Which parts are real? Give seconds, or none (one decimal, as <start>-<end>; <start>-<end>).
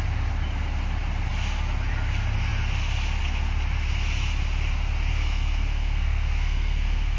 0.0-5.1